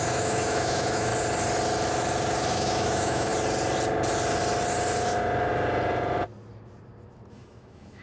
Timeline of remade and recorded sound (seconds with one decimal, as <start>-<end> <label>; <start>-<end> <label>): 0.0-1.1 remade; 1.1-2.5 recorded; 2.5-3.3 remade; 3.3-7.3 recorded; 7.3-8.0 remade